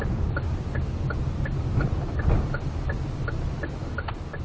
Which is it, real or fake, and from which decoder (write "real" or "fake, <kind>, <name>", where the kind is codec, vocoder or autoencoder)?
real